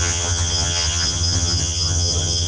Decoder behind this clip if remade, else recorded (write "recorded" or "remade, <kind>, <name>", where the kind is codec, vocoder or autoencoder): remade, vocoder, HiFi-GAN